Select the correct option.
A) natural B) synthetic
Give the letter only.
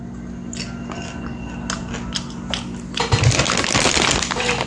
A